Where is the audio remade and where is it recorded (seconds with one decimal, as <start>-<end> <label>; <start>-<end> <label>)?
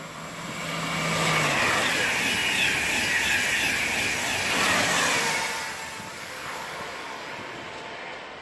0.0-6.1 recorded; 6.1-7.3 remade; 7.3-8.4 recorded